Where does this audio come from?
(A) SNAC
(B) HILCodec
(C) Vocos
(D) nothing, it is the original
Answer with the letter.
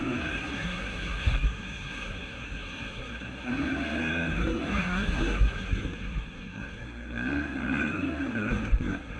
A